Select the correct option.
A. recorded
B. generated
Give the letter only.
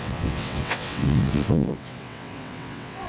B